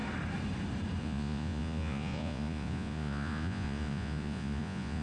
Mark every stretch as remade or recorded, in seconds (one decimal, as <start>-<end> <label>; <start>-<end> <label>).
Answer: 0.0-1.0 recorded; 1.0-5.0 remade